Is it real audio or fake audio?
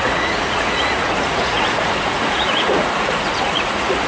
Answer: fake